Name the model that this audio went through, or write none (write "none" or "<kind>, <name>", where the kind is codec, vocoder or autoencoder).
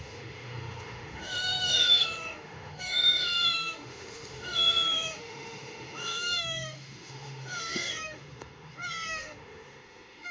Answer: autoencoder, DAC-VAE